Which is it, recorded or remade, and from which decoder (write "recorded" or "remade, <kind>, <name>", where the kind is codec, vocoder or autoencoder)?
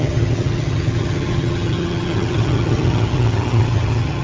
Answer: remade, vocoder, HiFi-GAN